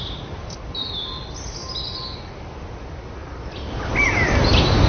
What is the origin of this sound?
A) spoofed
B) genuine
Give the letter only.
B